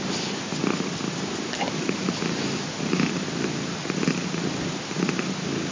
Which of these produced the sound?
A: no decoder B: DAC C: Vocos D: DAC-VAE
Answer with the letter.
A